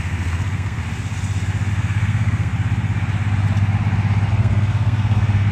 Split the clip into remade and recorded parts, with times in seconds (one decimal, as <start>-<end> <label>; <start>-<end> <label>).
0.0-0.8 remade; 0.8-1.7 recorded; 1.7-2.5 remade; 2.5-4.3 recorded; 4.3-5.5 remade